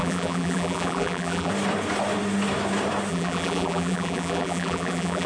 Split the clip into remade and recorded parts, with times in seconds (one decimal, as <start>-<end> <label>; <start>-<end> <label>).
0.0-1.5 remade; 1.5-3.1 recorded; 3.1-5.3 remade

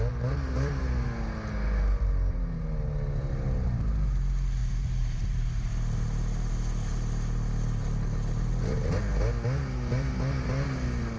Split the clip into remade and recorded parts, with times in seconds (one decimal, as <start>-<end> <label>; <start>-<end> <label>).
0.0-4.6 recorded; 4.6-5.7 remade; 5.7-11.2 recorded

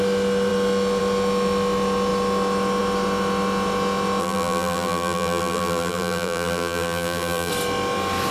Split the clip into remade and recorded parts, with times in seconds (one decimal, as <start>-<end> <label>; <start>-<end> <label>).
0.0-4.2 recorded; 4.2-7.5 remade; 7.5-8.3 recorded

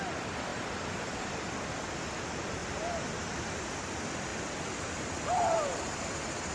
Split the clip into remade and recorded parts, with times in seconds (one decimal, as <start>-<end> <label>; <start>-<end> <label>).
0.0-0.5 recorded; 0.5-1.3 remade; 1.3-2.6 recorded; 2.6-3.7 remade; 3.7-6.5 recorded

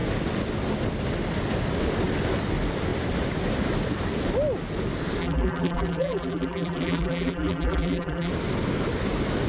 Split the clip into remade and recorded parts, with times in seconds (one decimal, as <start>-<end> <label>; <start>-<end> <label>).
0.0-5.2 recorded; 5.2-8.3 remade; 8.3-9.5 recorded

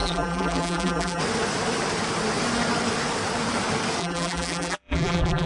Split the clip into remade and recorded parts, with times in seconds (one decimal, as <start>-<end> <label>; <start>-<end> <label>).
0.0-1.2 remade; 1.2-4.0 recorded; 4.0-5.5 remade